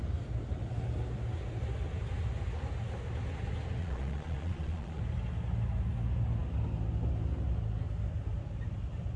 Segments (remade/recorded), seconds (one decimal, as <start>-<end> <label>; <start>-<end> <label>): 0.0-3.8 recorded; 3.8-5.0 remade; 5.0-9.2 recorded